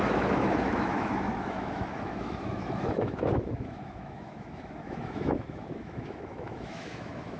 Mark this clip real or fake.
fake